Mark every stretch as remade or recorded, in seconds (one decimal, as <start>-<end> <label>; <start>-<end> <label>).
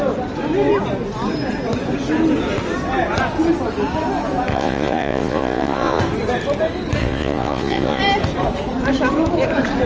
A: 0.0-4.5 recorded; 4.5-6.0 remade; 6.0-7.0 recorded; 7.0-8.0 remade; 8.0-9.9 recorded